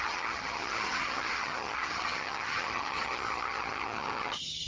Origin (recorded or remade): remade